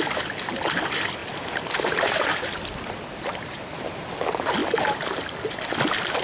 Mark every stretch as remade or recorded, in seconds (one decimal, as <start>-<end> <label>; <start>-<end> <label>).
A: 0.0-6.2 recorded